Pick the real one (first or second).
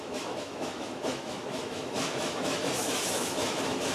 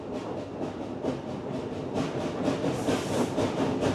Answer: second